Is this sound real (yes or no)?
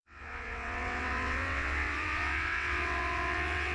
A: no